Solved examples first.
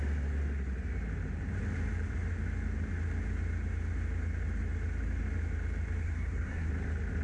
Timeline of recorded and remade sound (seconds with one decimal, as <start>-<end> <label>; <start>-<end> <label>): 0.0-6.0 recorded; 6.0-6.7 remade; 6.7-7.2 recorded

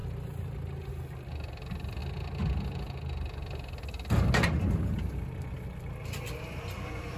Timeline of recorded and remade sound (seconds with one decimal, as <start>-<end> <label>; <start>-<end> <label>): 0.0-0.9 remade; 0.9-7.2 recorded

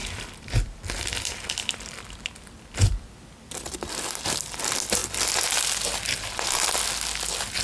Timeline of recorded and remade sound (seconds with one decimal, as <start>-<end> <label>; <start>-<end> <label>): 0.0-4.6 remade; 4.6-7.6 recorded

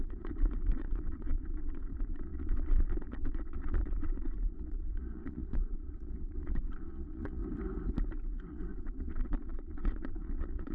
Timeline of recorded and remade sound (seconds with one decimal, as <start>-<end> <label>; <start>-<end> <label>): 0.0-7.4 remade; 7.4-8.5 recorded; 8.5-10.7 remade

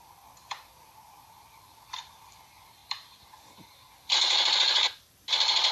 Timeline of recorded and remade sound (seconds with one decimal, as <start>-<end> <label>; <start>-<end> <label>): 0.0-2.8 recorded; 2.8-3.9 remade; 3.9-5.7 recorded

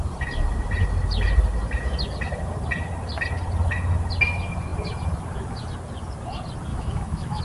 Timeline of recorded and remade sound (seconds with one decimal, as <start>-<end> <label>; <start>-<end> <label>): 0.0-6.7 recorded; 6.7-7.4 remade

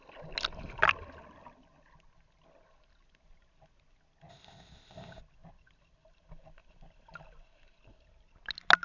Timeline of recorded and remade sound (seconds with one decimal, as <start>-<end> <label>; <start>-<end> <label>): 0.0-4.3 recorded; 4.3-5.2 remade; 5.2-8.8 recorded

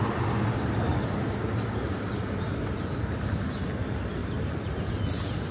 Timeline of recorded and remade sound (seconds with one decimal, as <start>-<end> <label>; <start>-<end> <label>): 0.0-0.9 recorded; 0.9-2.1 remade; 2.1-4.2 recorded; 4.2-5.0 remade; 5.0-5.5 recorded